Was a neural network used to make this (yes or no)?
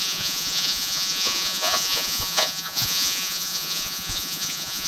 yes